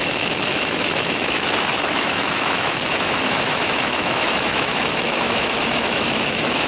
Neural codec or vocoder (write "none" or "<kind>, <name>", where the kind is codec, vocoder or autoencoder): autoencoder, DAC-VAE